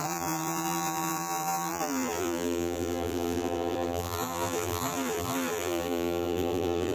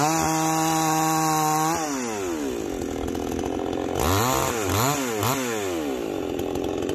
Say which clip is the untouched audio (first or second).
second